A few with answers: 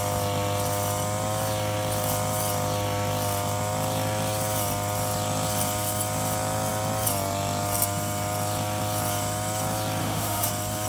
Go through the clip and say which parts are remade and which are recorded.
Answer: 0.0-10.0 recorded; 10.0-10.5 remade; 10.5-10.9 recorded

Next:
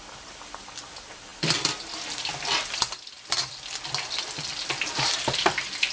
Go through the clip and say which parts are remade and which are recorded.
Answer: 0.0-5.9 recorded

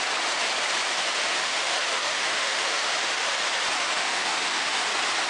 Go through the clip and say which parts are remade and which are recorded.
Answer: 0.0-1.4 recorded; 1.4-3.3 remade; 3.3-3.8 recorded; 3.8-4.8 remade; 4.8-5.3 recorded

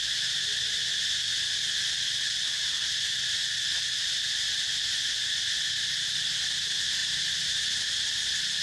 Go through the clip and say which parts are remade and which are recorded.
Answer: 0.0-8.6 recorded

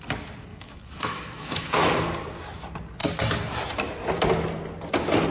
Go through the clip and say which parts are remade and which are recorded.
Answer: 0.0-0.5 recorded; 0.5-1.9 remade; 1.9-5.3 recorded

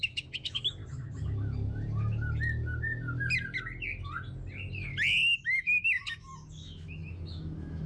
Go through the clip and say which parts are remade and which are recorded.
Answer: 0.0-0.8 remade; 0.8-5.4 recorded; 5.4-7.9 remade